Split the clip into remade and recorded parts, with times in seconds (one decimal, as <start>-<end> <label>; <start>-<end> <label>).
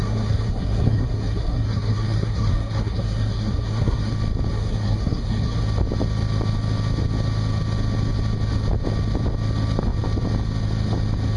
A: 0.0-4.1 remade; 4.1-4.5 recorded; 4.5-5.6 remade; 5.6-11.4 recorded